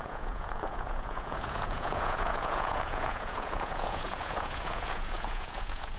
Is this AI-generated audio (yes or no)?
yes